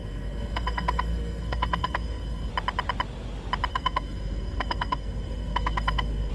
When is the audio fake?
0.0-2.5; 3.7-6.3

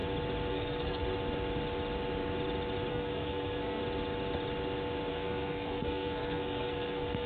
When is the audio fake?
0.5-1.0; 2.9-3.8; 5.1-7.3

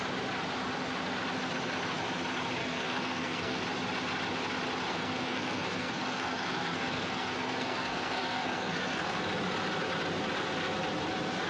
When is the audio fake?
2.6-3.6; 4.9-9.2

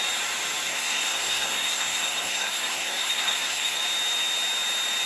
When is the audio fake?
0.7-3.8

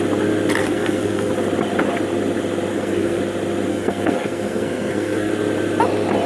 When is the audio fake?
0.6-1.3; 2.7-3.2; 3.7-5.3

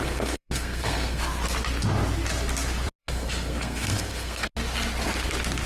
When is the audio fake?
0.0-1.2; 3.0-4.5

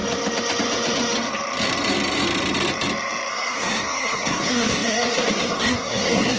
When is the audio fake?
3.3-6.4